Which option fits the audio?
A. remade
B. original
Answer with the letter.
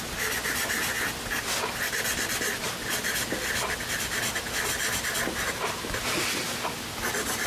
B